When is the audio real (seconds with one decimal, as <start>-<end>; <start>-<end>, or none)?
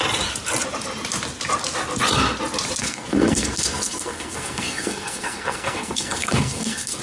0.0-2.8